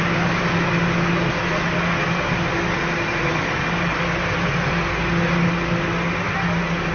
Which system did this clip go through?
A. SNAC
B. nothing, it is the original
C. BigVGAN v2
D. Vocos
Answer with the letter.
B